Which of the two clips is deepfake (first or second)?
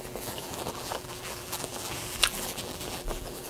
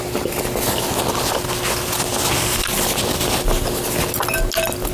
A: first